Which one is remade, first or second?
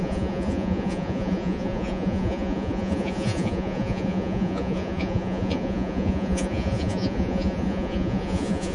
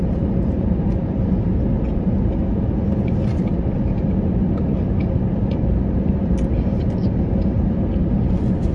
first